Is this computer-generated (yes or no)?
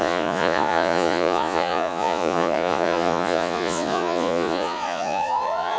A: yes